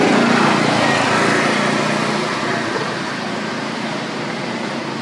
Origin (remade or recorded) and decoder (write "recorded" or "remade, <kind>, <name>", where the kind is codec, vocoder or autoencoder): recorded